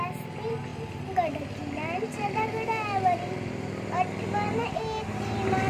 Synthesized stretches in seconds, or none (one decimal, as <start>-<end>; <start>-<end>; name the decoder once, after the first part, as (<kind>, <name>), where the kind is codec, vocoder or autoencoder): none